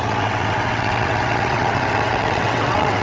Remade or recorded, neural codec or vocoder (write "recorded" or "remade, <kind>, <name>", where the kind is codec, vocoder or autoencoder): remade, vocoder, WaveNeXt